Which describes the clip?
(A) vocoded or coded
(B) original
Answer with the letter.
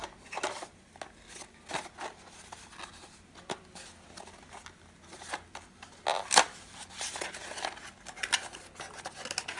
B